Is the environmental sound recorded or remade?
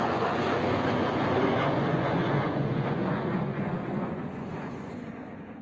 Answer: remade